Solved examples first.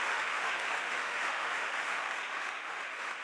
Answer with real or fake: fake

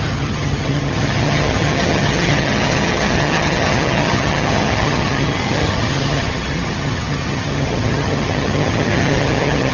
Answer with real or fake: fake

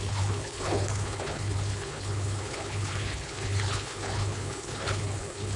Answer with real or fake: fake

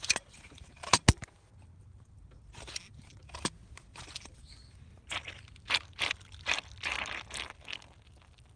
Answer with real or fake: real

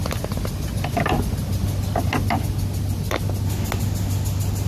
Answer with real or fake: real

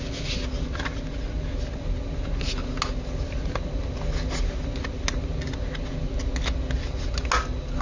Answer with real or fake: real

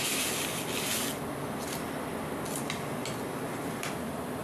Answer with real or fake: real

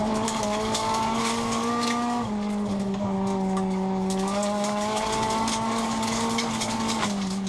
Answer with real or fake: fake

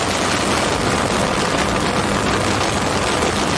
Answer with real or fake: real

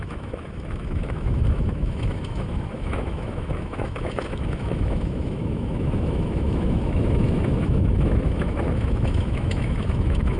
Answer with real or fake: fake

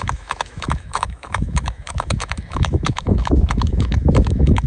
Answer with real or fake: fake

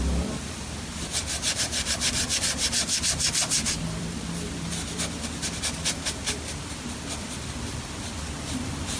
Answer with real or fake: fake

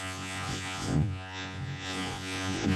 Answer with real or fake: fake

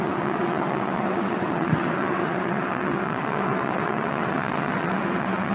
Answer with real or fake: fake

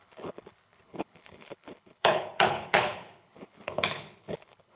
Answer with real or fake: fake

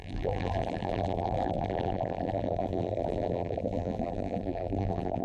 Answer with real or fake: fake